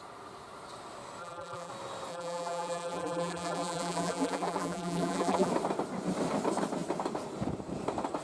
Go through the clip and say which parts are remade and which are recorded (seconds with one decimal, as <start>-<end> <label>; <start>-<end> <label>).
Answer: 0.0-1.2 recorded; 1.2-1.7 remade; 1.7-2.1 recorded; 2.1-5.5 remade; 5.5-8.2 recorded